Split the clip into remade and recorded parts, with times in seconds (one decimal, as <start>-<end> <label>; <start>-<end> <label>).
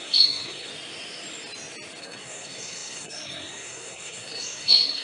0.0-0.7 remade; 0.7-2.0 recorded; 2.0-5.0 remade